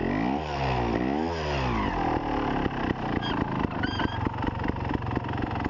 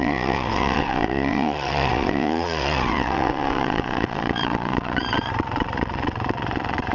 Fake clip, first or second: second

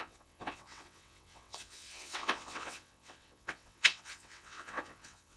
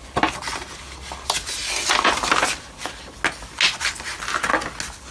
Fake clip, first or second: first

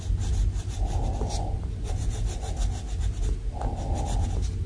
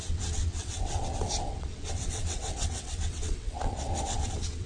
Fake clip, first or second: second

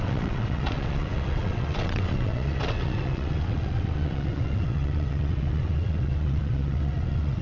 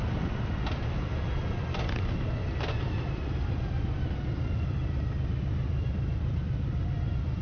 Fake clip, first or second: first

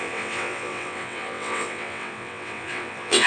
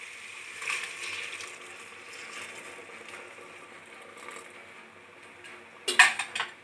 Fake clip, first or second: first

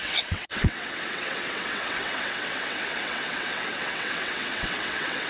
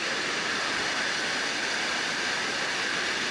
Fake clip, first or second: first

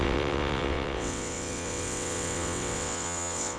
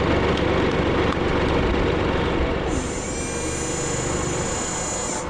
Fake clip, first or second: first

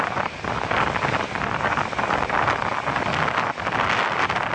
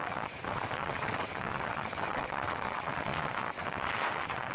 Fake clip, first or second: second